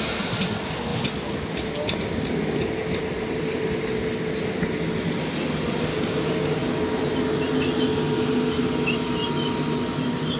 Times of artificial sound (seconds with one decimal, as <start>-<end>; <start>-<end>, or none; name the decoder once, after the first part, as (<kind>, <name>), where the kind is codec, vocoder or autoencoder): 5.9-6.6 (codec, DAC)